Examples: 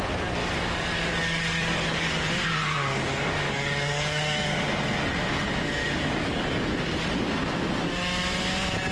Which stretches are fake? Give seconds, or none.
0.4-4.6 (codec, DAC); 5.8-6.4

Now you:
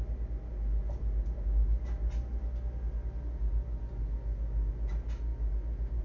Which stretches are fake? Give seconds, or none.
none

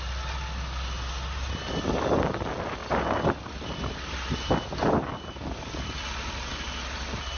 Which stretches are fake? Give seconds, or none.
none